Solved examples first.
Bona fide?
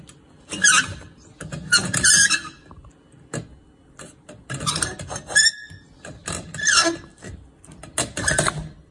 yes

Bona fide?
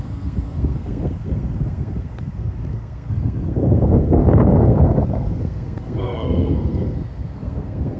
no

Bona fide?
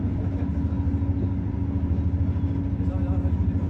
yes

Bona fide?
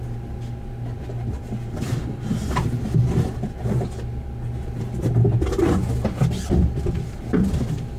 yes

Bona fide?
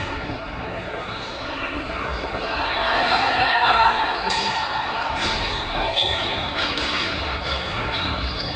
no